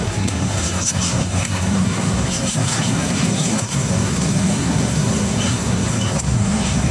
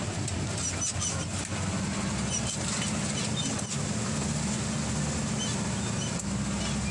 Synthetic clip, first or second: first